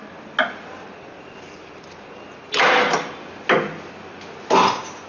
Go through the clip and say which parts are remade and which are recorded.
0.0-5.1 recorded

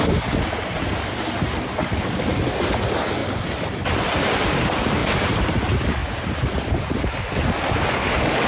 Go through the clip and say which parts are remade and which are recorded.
0.0-3.2 recorded; 3.2-4.1 remade; 4.1-8.5 recorded

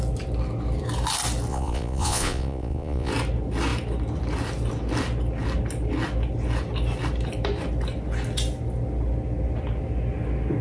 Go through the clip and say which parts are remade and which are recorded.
0.0-1.5 recorded; 1.5-3.1 remade; 3.1-10.6 recorded

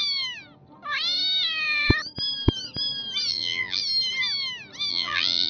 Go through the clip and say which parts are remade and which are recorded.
0.0-3.3 recorded; 3.3-3.8 remade; 3.8-4.9 recorded; 4.9-5.5 remade